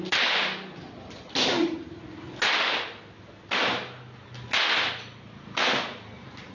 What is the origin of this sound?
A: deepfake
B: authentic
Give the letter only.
B